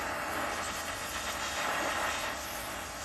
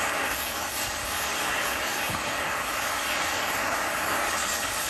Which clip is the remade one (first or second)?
second